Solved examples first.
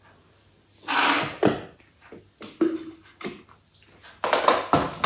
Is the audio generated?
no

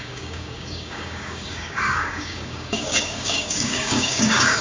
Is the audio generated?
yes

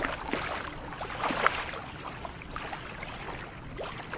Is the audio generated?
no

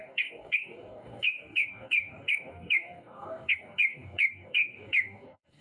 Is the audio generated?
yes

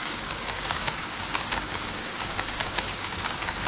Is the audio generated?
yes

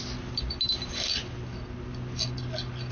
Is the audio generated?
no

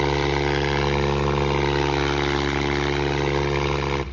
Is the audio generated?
no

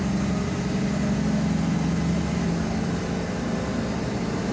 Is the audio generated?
no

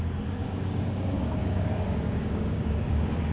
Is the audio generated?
yes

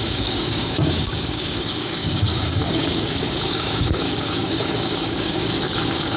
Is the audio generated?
yes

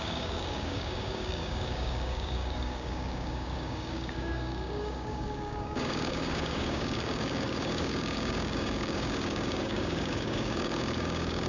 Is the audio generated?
yes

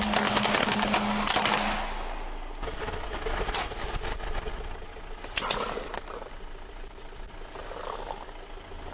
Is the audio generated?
no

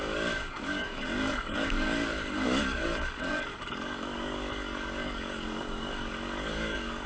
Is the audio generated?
yes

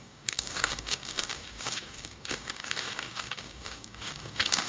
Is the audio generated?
yes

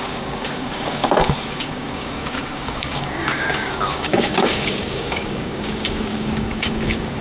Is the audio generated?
yes